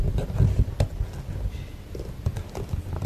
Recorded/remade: recorded